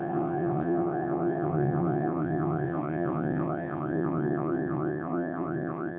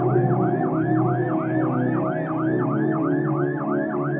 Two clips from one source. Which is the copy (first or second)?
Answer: first